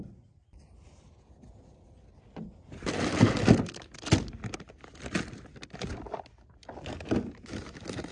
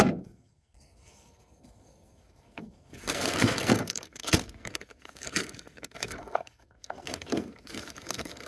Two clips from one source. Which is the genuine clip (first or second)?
first